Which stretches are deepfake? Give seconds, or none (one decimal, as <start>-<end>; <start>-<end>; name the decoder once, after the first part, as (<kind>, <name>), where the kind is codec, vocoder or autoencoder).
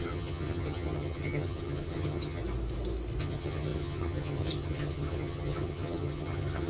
0.0-2.4 (vocoder, HiFi-GAN); 3.2-6.7